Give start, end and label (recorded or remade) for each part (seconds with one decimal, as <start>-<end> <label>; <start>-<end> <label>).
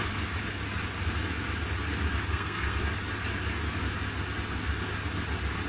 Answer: 0.0-2.3 recorded; 2.3-2.8 remade; 2.8-5.7 recorded